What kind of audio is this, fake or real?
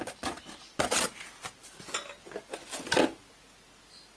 real